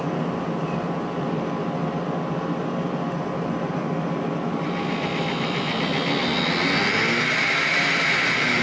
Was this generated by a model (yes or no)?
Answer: no